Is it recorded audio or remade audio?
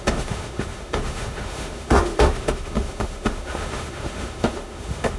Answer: remade